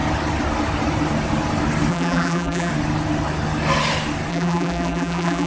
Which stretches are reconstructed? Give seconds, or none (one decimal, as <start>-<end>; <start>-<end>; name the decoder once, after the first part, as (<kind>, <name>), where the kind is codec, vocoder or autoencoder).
1.9-2.7 (vocoder, BigVGAN v2); 4.3-5.5